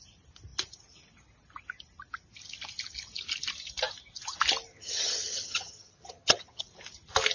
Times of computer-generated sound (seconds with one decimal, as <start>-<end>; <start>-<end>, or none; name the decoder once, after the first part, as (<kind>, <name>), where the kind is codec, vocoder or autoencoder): 4.7-6.6 (vocoder, HiFi-GAN)